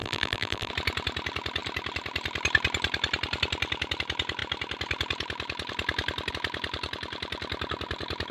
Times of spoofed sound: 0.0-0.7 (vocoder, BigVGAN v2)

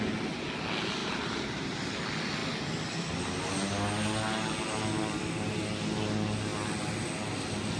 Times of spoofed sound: 1.0-1.9 (vocoder, BigVGAN v2)

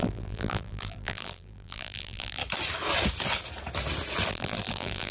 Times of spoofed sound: 0.0-2.4 (vocoder, BigVGAN v2); 4.3-5.1

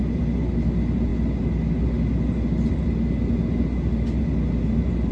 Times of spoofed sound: none

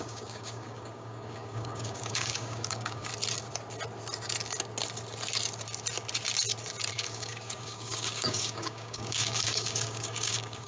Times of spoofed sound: 0.0-3.1 (codec, DAC); 6.9-10.7

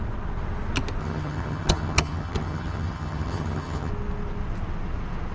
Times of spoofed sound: 1.0-3.9 (vocoder, HiFi-GAN)